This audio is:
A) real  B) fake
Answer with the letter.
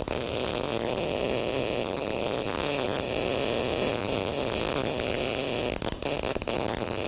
A